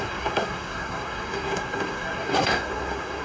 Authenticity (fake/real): fake